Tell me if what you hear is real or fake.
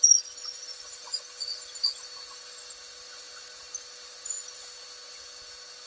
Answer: real